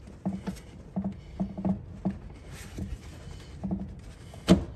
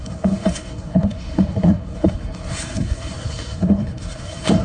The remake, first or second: second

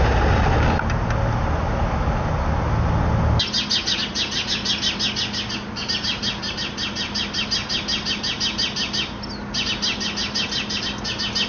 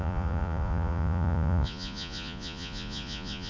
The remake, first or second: second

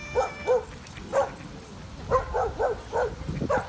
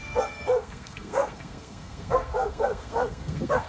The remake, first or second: second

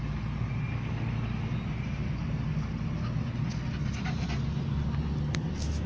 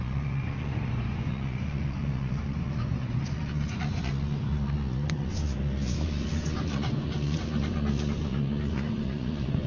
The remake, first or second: second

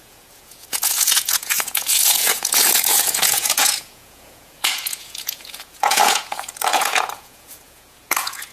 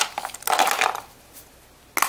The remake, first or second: first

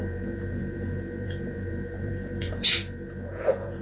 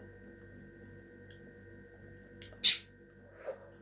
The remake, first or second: first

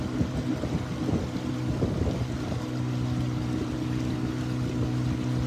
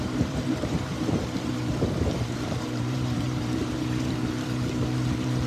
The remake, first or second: second